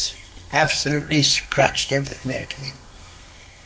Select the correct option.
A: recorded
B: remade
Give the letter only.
B